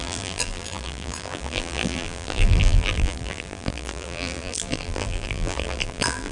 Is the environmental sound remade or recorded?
remade